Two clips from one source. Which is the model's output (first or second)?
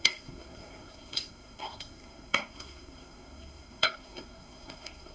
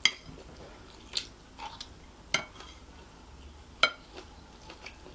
first